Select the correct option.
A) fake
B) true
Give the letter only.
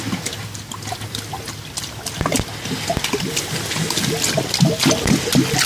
B